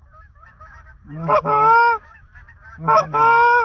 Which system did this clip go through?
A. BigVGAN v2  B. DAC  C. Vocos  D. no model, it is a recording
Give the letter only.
B